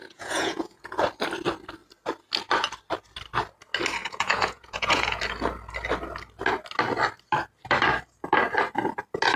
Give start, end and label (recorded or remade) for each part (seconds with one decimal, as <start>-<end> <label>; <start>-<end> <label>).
0.0-1.0 remade; 1.0-4.0 recorded; 4.0-5.2 remade; 5.2-9.4 recorded